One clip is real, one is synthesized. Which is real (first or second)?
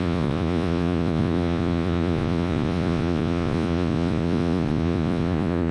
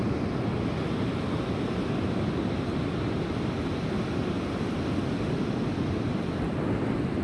second